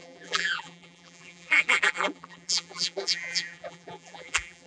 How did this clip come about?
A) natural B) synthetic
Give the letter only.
B